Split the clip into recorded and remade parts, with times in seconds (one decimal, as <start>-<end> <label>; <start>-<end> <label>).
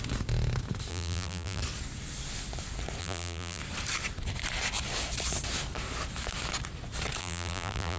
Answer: 0.0-0.9 recorded; 0.9-1.6 remade; 1.6-3.0 recorded; 3.0-3.6 remade; 3.6-7.2 recorded; 7.2-8.0 remade